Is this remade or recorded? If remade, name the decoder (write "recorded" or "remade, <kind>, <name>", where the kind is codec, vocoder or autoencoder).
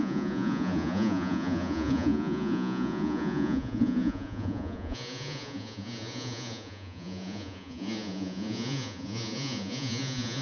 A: remade, vocoder, Vocos